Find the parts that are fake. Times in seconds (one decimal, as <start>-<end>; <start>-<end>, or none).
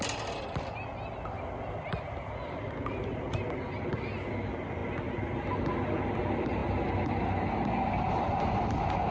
none